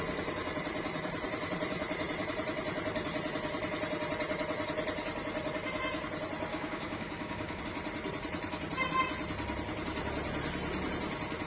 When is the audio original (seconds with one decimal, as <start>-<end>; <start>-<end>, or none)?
0.0-6.5; 7.6-11.5